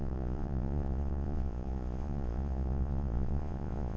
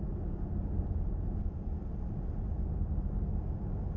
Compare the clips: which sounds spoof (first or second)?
first